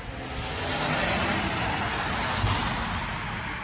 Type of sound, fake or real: real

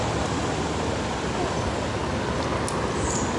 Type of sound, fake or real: real